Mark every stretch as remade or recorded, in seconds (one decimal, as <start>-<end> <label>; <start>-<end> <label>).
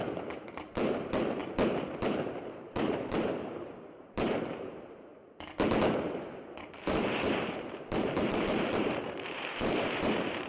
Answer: 0.0-1.4 remade; 1.4-1.9 recorded; 1.9-5.1 remade; 5.1-6.6 recorded; 6.6-10.5 remade